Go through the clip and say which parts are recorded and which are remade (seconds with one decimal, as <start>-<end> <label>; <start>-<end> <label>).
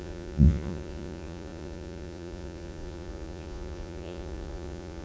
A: 0.0-5.0 remade